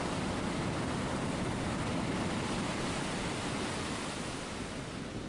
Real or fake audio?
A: real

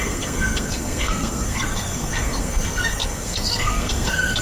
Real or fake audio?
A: fake